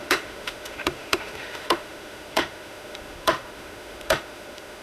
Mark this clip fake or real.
fake